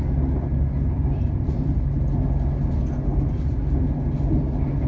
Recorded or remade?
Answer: recorded